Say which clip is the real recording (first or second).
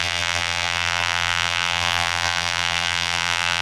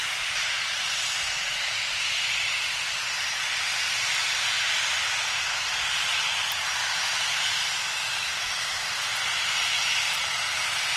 second